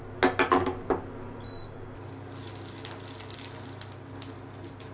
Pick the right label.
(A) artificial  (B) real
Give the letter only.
B